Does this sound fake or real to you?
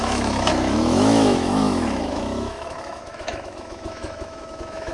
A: fake